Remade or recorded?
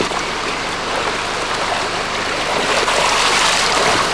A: recorded